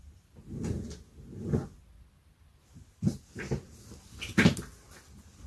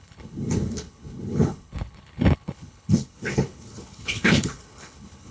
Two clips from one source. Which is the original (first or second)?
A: first